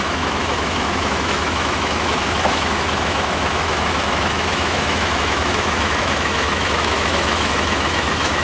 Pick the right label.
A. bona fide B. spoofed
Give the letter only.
B